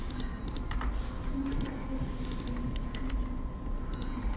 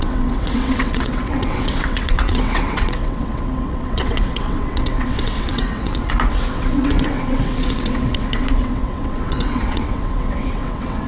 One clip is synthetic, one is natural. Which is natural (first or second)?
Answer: first